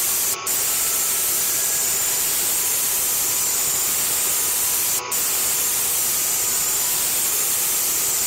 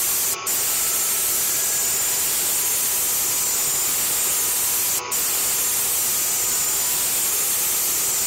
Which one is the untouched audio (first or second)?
second